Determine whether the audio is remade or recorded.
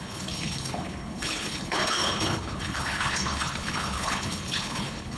remade